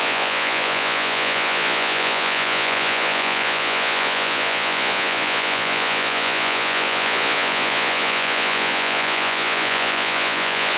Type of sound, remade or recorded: remade